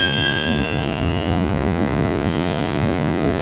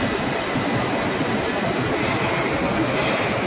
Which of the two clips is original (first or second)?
second